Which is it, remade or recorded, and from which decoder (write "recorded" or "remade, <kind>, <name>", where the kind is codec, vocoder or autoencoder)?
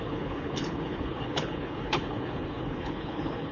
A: remade, codec, HILCodec